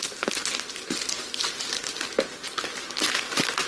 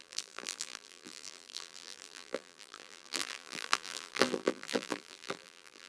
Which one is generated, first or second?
second